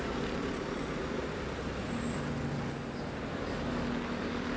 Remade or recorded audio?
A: recorded